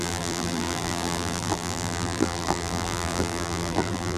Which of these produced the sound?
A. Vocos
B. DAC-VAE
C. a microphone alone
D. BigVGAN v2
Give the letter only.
D